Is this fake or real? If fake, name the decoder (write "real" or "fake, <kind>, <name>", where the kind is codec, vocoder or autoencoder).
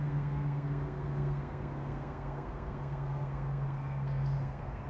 fake, codec, SNAC